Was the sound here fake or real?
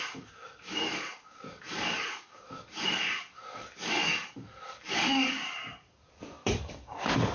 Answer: fake